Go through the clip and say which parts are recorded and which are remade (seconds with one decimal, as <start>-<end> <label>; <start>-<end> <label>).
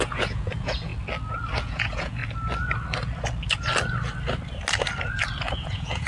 0.0-0.9 remade; 0.9-1.6 recorded; 1.6-2.2 remade; 2.2-5.5 recorded; 5.5-6.1 remade